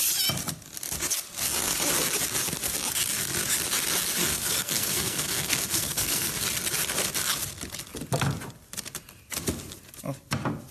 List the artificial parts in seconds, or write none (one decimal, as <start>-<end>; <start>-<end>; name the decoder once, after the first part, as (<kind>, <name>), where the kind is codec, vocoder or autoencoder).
4.3-6.3 (codec, SNAC)